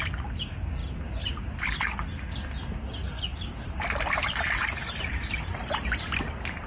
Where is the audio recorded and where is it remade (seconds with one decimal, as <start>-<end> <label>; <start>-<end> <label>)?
0.0-6.7 recorded